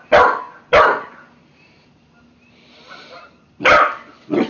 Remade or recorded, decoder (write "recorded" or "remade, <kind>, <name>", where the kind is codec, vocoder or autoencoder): recorded